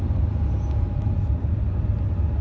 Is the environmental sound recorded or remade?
recorded